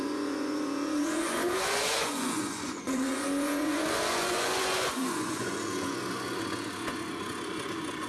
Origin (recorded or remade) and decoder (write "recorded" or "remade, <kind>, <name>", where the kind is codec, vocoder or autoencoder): remade, vocoder, Vocos